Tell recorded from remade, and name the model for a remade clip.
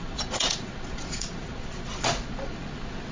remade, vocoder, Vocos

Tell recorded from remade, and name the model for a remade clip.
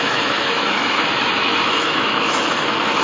remade, autoencoder, DAC-VAE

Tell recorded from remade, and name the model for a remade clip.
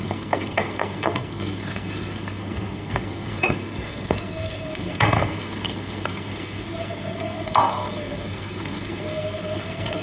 remade, codec, SNAC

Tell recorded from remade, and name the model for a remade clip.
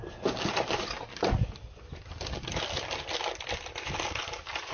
recorded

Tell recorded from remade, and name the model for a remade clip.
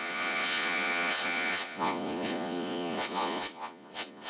remade, vocoder, Vocos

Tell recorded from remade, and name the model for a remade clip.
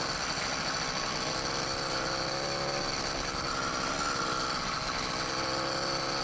recorded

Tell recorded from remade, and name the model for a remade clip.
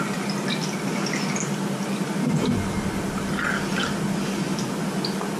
recorded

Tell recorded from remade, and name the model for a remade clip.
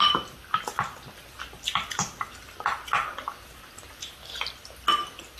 recorded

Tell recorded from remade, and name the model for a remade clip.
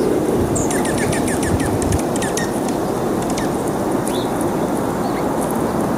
recorded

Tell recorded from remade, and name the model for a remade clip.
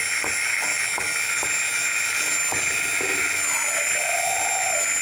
recorded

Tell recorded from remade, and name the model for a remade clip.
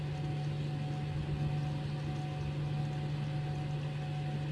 recorded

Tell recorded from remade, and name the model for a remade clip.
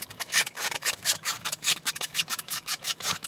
remade, codec, DAC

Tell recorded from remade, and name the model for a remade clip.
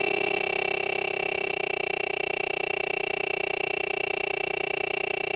recorded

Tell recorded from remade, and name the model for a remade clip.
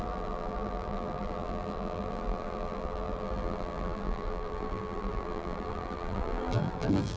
remade, vocoder, BigVGAN v2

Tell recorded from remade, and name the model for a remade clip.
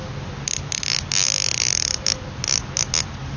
recorded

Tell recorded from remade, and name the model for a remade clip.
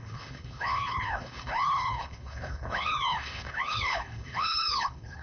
remade, codec, HILCodec